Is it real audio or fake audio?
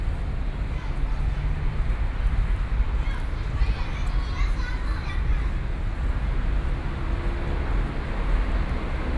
real